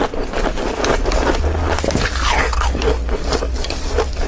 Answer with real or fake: real